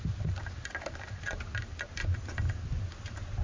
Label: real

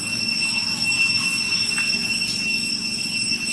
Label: real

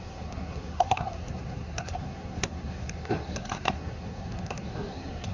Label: fake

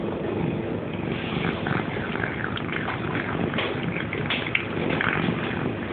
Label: real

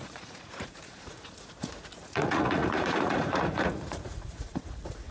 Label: fake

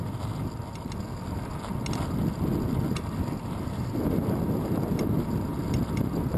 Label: real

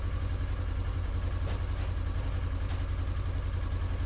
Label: real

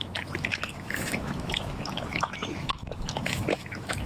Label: fake